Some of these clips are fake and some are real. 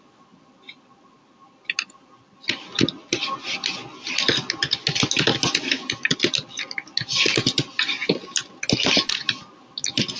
real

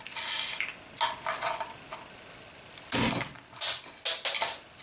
real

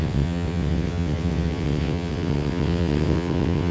fake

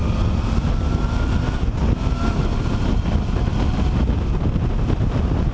real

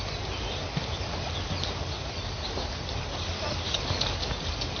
real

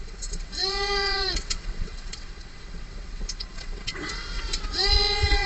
fake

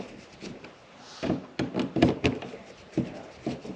real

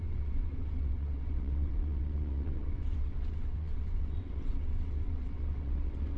fake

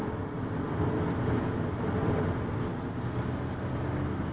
real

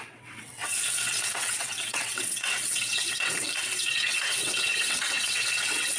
fake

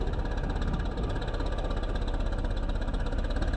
real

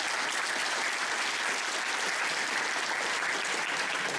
real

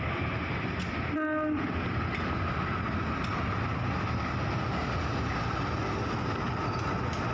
real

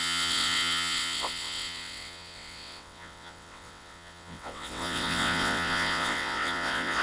fake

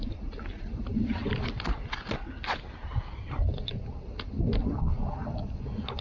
real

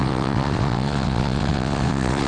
fake